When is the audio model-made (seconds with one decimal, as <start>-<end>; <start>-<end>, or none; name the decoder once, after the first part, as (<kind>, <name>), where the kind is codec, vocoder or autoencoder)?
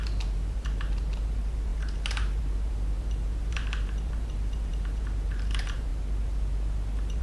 0.0-5.9 (vocoder, BigVGAN v2)